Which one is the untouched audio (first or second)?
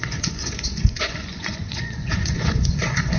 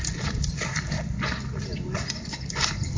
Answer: second